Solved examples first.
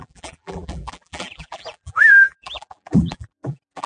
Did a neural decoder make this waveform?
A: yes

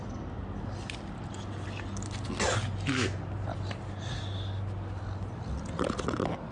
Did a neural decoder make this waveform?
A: no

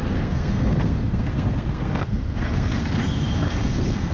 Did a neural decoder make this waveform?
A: yes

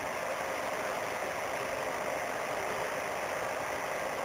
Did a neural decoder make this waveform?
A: no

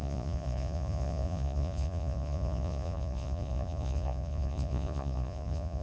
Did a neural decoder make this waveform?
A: yes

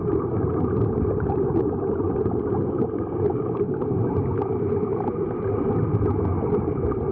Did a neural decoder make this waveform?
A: no